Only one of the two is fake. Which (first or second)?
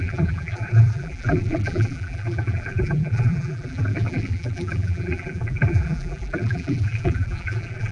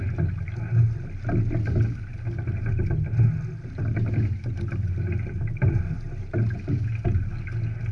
first